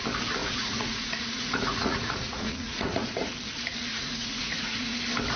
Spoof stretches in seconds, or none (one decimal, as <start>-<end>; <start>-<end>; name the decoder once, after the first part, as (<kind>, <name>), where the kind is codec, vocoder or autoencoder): 0.4-3.3 (vocoder, Vocos); 3.9-5.0